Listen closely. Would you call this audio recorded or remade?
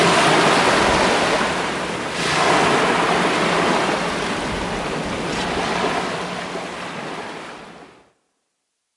recorded